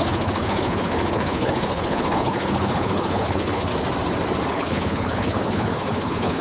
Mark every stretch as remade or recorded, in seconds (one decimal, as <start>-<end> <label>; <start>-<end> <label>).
0.0-3.7 remade; 3.7-4.5 recorded; 4.5-6.4 remade